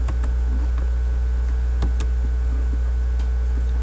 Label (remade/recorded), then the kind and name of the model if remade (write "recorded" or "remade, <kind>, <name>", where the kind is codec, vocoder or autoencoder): recorded